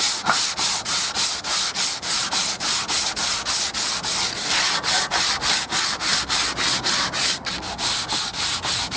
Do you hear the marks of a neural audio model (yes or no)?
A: no